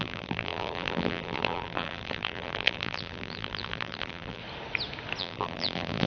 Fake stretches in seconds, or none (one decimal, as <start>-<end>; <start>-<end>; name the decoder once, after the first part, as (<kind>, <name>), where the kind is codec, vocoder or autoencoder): 0.0-4.4 (vocoder, BigVGAN v2); 5.2-6.1